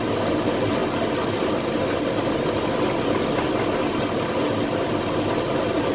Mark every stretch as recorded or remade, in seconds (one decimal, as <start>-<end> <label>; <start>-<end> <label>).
0.0-5.9 recorded